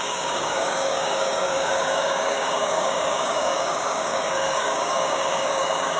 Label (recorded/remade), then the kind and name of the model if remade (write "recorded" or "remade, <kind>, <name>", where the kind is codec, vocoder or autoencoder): remade, codec, DAC